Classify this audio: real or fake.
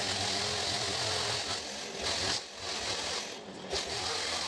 real